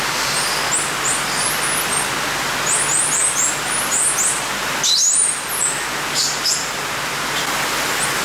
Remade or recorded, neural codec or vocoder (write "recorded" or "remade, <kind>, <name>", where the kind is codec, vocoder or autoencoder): recorded